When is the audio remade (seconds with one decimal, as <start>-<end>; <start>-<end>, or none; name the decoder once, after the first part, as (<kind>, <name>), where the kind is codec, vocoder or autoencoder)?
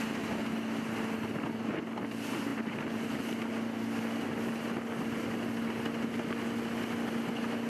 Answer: none